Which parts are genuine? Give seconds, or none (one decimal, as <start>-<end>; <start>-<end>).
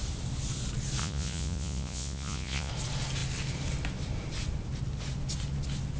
0.0-1.0; 2.7-6.0